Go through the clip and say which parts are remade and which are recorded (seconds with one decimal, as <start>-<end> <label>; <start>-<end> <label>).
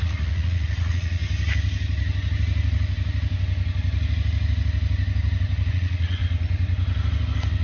0.0-1.2 remade; 1.2-5.7 recorded; 5.7-6.2 remade; 6.2-7.6 recorded